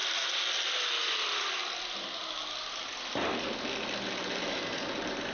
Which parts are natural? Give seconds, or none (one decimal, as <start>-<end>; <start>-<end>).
0.0-5.3